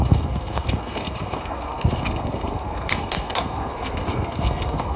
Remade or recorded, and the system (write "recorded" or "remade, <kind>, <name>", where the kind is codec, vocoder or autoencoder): remade, codec, SNAC